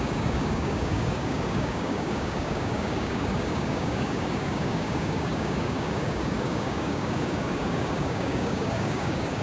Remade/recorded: remade